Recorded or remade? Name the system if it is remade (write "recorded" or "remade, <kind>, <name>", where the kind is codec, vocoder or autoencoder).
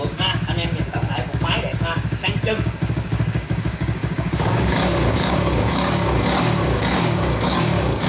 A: remade, codec, DAC